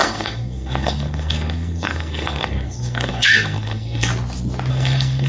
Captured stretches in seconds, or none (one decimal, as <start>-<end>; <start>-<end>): 4.1-4.7